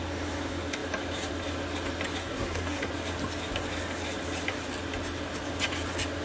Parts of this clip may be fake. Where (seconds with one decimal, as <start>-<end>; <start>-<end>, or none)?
2.2-2.9